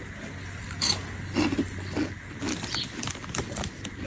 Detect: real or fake real